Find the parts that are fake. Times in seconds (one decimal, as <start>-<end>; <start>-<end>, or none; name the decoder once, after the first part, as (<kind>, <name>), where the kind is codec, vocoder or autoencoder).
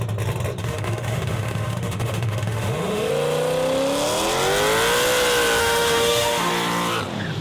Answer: 0.6-3.1 (autoencoder, DAC-VAE); 5.6-6.5